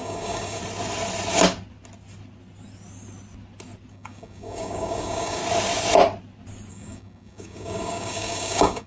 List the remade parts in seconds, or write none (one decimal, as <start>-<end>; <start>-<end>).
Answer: 0.0-0.6; 3.9-5.4; 6.7-8.9